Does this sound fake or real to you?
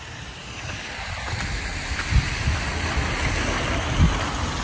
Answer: fake